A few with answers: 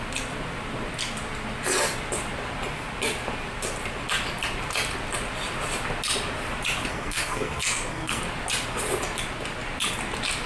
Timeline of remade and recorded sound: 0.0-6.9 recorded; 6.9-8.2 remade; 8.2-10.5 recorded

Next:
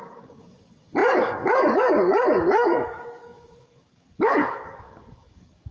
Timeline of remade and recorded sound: 0.0-5.7 remade

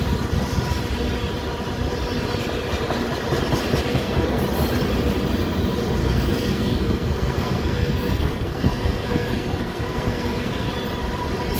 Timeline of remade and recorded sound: 0.0-3.9 recorded; 3.9-4.4 remade; 4.4-6.0 recorded; 6.0-10.7 remade; 10.7-11.6 recorded

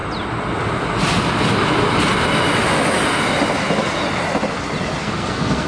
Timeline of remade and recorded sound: 0.0-5.0 recorded; 5.0-5.7 remade

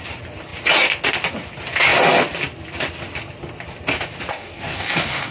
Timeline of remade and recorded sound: 0.0-4.3 recorded; 4.3-5.3 remade

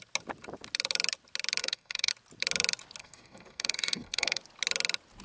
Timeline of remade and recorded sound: 0.0-1.6 recorded; 1.6-2.1 remade; 2.1-3.0 recorded; 3.0-4.4 remade; 4.4-5.2 recorded

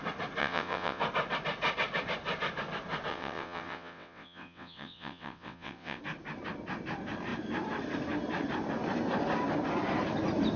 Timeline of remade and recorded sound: 0.0-0.4 recorded; 0.4-1.0 remade; 1.0-3.1 recorded; 3.1-6.0 remade; 6.0-10.6 recorded